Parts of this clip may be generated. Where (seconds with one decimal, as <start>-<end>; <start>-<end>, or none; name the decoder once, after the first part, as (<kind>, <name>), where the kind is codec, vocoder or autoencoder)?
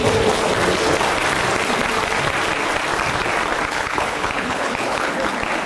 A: 3.7-5.1 (codec, HILCodec)